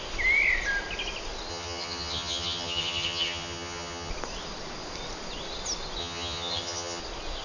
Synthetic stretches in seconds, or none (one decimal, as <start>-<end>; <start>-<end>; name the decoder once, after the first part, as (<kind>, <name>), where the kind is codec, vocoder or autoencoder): 1.5-4.1 (vocoder, HiFi-GAN); 6.0-7.0